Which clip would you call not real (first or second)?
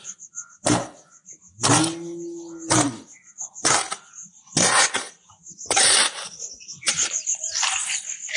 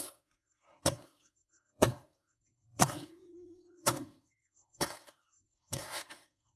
second